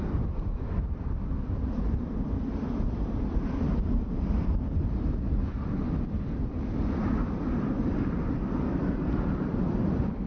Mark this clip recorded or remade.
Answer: remade